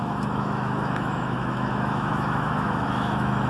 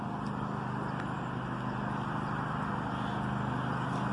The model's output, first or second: first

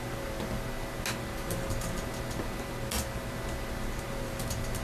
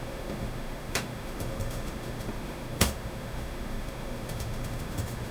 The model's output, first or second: second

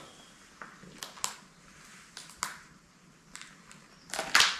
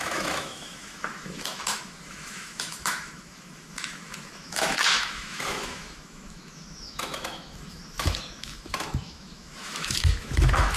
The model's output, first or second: second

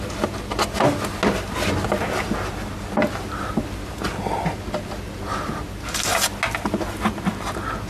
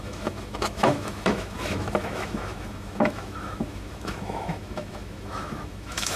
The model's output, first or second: second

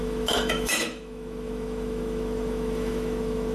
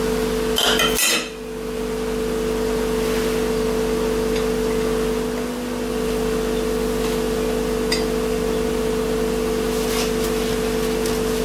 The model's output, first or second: first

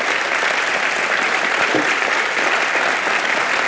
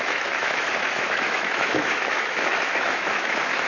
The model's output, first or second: second